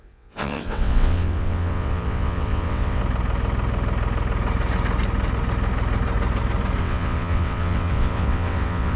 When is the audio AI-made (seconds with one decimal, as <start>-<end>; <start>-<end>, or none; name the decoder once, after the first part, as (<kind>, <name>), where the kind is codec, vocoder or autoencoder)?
0.0-3.0 (vocoder, WaveNeXt); 6.8-9.0